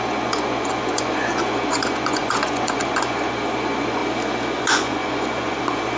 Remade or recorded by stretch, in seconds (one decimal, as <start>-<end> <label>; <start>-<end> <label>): 0.0-4.0 remade; 4.0-4.6 recorded; 4.6-6.0 remade